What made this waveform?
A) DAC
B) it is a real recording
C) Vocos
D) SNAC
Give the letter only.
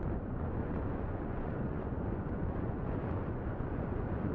C